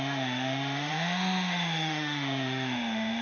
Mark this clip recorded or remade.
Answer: remade